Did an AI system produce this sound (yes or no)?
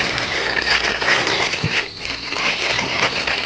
yes